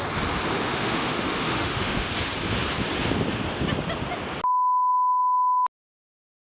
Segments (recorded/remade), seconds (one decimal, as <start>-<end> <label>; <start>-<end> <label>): 0.0-0.7 recorded; 0.7-2.1 remade; 2.1-6.5 recorded